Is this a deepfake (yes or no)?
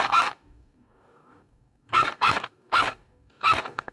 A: yes